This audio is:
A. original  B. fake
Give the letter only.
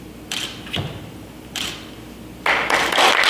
A